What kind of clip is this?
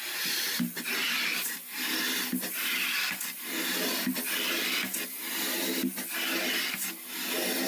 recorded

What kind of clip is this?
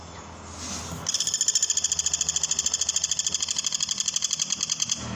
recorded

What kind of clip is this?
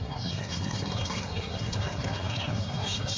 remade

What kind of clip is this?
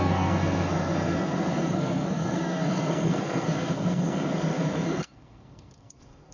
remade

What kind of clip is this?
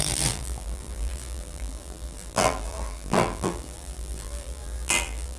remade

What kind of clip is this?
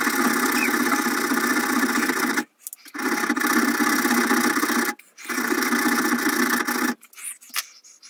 recorded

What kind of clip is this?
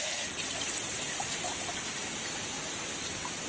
recorded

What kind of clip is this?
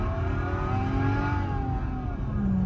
recorded